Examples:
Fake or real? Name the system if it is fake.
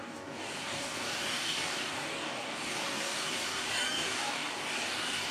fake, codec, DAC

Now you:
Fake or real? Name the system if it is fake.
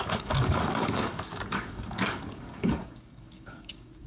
fake, codec, DAC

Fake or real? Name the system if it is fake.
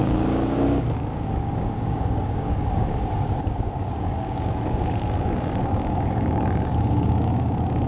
fake, codec, DAC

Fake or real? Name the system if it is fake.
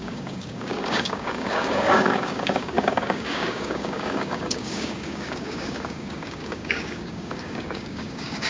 fake, codec, DAC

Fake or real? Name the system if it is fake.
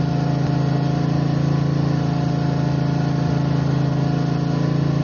real